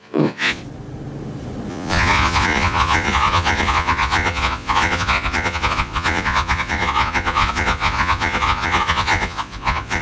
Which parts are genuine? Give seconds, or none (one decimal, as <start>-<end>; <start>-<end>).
0.6-1.7